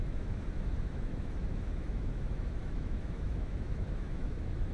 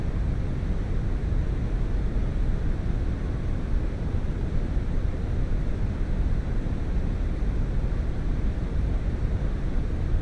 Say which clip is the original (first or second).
second